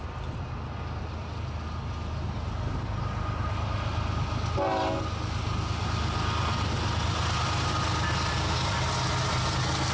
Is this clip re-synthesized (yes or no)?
no